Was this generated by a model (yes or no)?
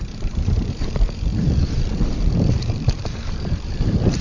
yes